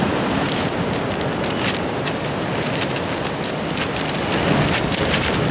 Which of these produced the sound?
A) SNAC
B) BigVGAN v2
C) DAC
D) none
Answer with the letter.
D